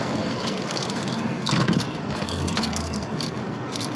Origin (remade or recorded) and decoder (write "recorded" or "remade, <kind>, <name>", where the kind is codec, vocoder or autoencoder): remade, codec, SNAC